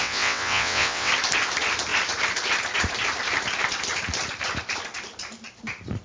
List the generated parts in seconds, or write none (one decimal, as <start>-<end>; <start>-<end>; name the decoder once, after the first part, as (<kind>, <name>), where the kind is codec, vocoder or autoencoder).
0.0-1.1 (vocoder, WaveNeXt)